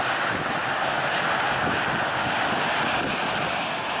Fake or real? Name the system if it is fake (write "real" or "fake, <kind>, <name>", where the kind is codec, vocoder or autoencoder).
real